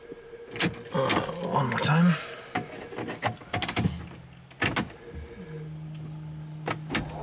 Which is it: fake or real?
real